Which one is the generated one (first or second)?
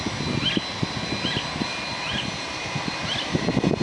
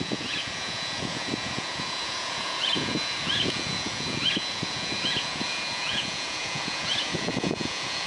second